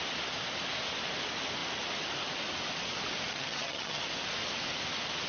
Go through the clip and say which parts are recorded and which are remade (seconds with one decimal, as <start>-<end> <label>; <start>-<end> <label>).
0.0-3.3 recorded; 3.3-4.0 remade; 4.0-5.3 recorded